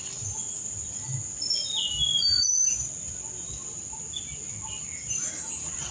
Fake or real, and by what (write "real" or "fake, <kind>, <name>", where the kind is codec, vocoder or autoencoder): real